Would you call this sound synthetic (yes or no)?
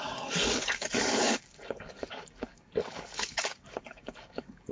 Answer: yes